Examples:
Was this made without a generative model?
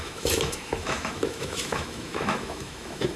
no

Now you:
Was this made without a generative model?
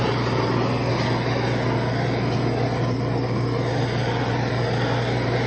yes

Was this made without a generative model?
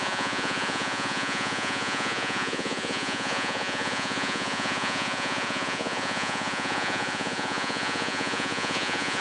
no